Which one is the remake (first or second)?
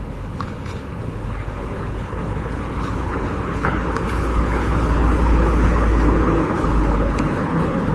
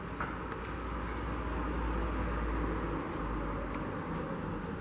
first